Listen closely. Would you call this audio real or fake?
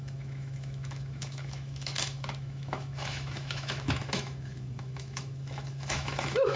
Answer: fake